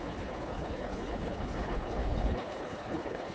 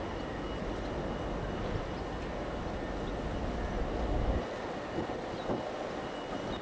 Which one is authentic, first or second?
second